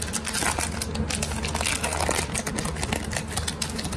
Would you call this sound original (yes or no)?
yes